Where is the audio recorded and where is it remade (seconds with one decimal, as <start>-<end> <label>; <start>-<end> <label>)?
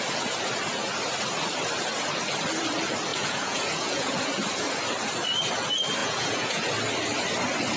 0.0-3.1 recorded; 3.1-4.2 remade; 4.2-6.0 recorded; 6.0-6.7 remade; 6.7-7.8 recorded